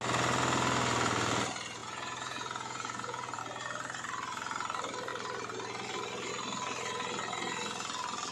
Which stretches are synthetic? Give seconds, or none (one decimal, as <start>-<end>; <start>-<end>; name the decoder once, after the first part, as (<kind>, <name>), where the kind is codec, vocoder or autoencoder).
1.8-3.4 (vocoder, Vocos)